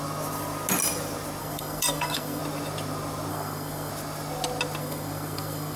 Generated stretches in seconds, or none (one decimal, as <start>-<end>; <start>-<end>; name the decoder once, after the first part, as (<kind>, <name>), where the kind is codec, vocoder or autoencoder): 1.4-2.4 (codec, SNAC); 3.3-3.9; 4.8-5.8